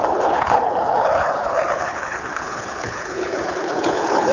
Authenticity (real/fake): fake